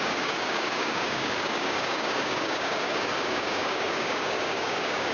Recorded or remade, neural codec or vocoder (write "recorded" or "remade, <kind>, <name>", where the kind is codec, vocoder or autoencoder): remade, codec, DAC